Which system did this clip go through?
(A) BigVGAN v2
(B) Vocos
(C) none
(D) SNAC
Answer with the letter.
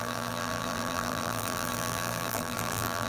A